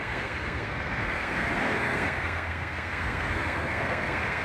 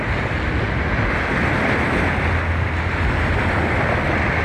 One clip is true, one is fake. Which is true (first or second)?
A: second